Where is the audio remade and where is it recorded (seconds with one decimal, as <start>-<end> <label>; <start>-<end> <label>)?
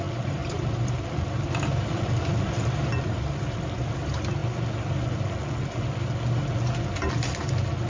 0.0-4.4 remade; 4.4-7.3 recorded; 7.3-7.9 remade